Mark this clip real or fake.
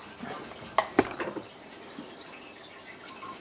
real